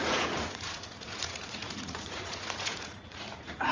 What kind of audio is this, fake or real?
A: fake